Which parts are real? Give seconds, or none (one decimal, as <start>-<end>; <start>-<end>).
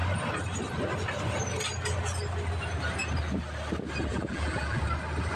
0.0-4.1; 4.8-5.4